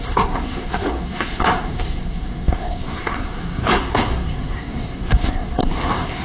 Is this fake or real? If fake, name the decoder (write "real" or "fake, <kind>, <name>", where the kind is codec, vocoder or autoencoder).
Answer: fake, codec, SNAC